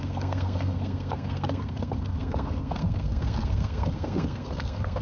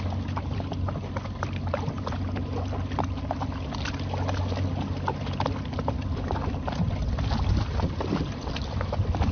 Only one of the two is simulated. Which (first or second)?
first